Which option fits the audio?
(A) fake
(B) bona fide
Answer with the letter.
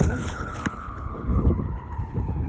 A